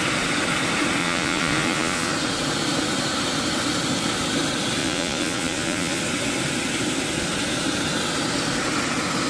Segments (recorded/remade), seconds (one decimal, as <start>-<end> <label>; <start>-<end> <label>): 0.0-1.0 recorded; 1.0-2.1 remade; 2.1-4.8 recorded; 4.8-6.0 remade; 6.0-9.3 recorded